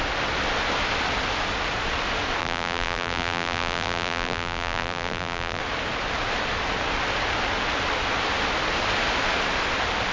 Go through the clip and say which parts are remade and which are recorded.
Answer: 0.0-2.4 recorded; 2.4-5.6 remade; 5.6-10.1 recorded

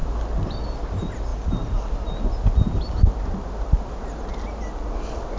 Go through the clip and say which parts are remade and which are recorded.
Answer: 0.0-5.4 recorded

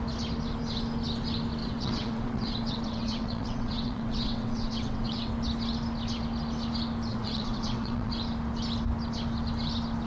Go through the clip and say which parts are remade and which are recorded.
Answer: 0.0-1.6 recorded; 1.6-5.3 remade; 5.3-7.1 recorded; 7.1-8.1 remade; 8.1-10.1 recorded